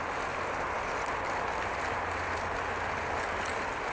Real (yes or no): yes